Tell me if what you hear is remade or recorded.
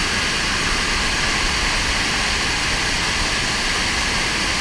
recorded